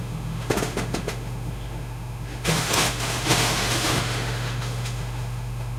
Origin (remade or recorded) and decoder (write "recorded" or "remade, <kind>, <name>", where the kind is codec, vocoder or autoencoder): remade, autoencoder, DAC-VAE